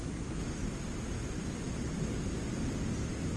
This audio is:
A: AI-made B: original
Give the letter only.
B